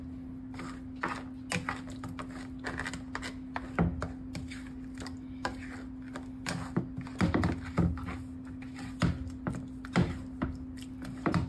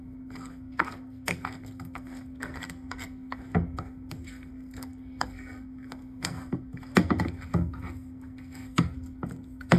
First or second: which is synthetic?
second